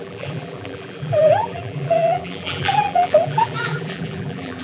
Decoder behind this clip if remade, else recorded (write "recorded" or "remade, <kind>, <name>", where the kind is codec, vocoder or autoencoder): remade, vocoder, BigVGAN v2